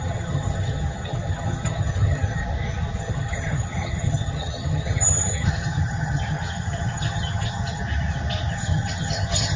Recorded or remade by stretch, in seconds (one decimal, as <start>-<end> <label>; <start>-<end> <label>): 0.0-2.4 remade; 2.4-3.0 recorded; 3.0-7.8 remade; 7.8-8.5 recorded; 8.5-9.6 remade